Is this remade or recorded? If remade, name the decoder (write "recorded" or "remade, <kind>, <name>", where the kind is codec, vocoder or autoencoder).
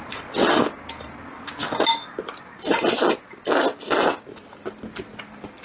recorded